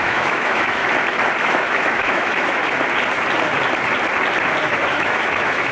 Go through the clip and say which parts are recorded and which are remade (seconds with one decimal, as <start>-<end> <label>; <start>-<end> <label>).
0.0-0.8 remade; 0.8-1.4 recorded; 1.4-2.6 remade; 2.6-4.7 recorded; 4.7-5.7 remade